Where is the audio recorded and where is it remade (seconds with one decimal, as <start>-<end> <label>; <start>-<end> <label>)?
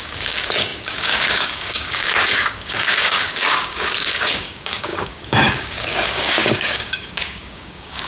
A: 0.0-8.1 remade